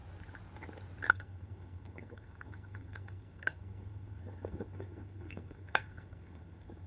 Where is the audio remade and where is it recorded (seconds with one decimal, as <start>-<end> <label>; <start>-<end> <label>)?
0.0-1.1 recorded; 1.1-6.9 remade